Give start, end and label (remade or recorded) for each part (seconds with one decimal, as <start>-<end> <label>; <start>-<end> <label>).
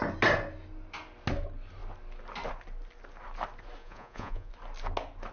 0.0-3.8 recorded; 3.8-4.5 remade; 4.5-5.3 recorded